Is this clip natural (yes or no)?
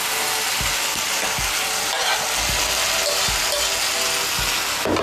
yes